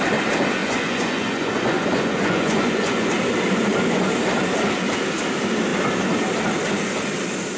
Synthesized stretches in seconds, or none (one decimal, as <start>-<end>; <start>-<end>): 0.6-3.1